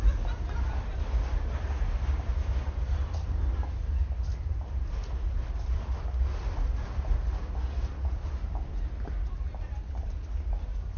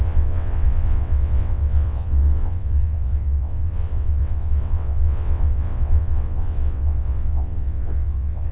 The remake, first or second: second